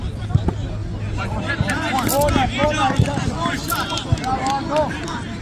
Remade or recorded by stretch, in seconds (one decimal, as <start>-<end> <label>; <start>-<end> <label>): 0.0-0.8 recorded; 0.8-4.0 remade; 4.0-5.4 recorded